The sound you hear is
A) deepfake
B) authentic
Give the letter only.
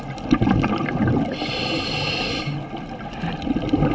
B